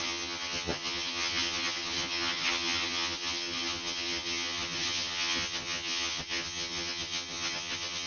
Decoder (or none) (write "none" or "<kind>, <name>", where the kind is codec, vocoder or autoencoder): vocoder, HiFi-GAN